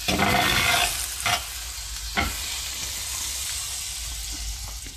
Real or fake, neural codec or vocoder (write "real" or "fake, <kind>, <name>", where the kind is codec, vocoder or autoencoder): real